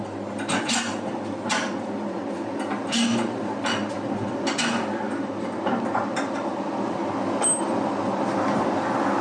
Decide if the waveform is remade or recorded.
recorded